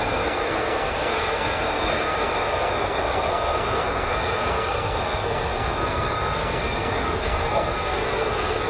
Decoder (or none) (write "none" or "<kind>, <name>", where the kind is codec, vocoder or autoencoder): codec, SNAC